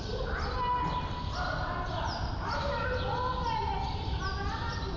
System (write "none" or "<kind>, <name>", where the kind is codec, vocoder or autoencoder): none